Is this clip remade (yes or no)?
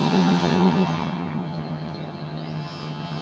yes